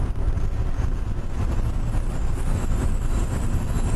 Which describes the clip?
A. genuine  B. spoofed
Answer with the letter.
A